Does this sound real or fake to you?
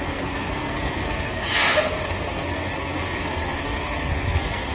fake